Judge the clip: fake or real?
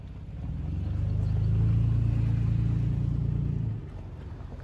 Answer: real